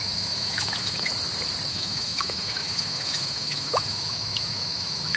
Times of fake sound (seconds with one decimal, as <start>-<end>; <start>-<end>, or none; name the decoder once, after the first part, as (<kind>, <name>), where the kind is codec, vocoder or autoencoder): 0.0-1.1 (autoencoder, DAC-VAE); 1.7-5.2